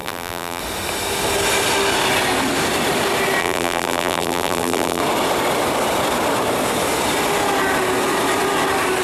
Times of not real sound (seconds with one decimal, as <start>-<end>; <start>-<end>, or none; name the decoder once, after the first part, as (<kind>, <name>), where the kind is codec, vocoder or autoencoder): 0.0-0.6 (vocoder, BigVGAN v2); 3.4-5.0